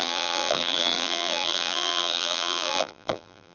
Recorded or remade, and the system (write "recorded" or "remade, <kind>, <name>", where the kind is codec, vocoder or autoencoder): remade, vocoder, BigVGAN v2